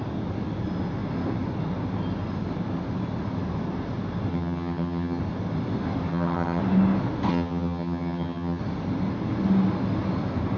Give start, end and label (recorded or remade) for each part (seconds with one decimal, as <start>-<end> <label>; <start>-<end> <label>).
0.0-4.3 recorded; 4.3-5.2 remade; 5.2-6.1 recorded; 6.1-6.6 remade; 6.6-7.3 recorded; 7.3-8.6 remade; 8.6-10.6 recorded